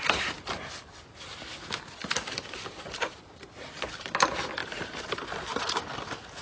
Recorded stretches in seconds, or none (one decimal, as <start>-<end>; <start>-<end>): 0.0-6.4